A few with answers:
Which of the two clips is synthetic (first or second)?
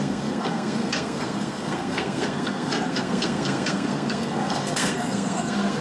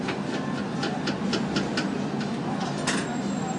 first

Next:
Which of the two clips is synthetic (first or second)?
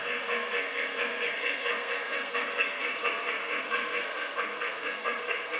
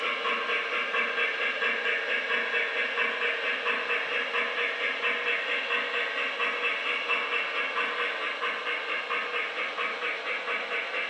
first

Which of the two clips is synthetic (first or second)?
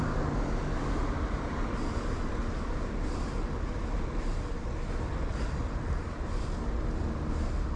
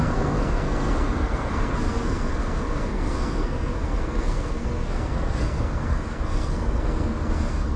second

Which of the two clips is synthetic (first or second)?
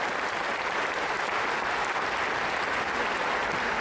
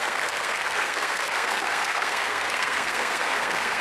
second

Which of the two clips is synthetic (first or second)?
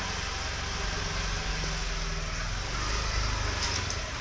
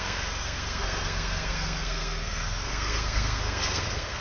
second